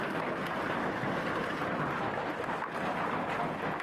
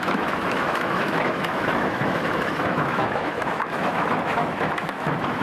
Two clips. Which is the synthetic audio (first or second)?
second